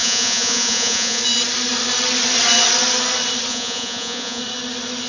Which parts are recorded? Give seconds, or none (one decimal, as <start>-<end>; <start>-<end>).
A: 1.2-3.5; 4.4-5.1